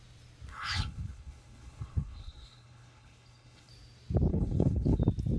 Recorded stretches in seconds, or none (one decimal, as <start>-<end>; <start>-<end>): 0.0-0.5; 3.7-4.3; 5.0-5.4